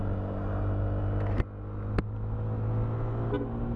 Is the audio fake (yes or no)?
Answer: no